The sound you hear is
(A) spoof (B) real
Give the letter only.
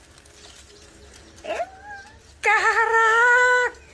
B